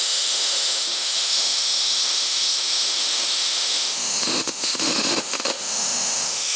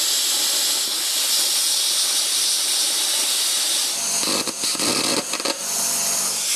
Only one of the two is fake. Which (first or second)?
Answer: first